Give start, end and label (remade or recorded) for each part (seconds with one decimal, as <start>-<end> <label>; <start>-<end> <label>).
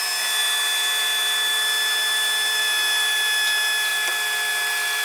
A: 0.0-5.0 recorded